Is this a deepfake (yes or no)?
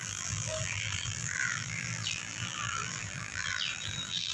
yes